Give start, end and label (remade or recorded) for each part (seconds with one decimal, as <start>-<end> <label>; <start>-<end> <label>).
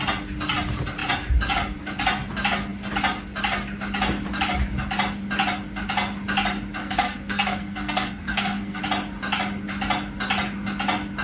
0.0-6.8 recorded; 6.8-8.8 remade; 8.8-11.2 recorded